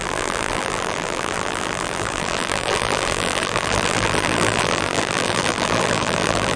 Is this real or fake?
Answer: fake